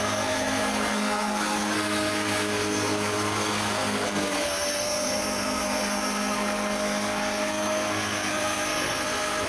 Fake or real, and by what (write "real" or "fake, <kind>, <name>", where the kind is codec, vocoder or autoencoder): fake, codec, SNAC